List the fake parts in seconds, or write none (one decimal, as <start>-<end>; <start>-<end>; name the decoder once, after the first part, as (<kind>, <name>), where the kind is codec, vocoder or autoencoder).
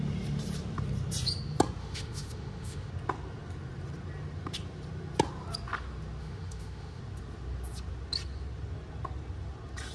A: 1.8-2.9 (autoencoder, DAC-VAE); 6.2-7.0